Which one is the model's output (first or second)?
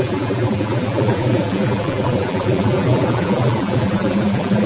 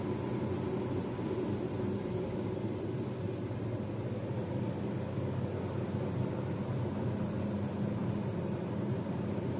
first